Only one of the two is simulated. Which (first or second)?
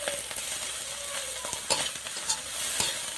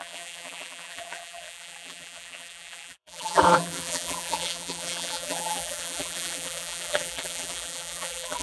second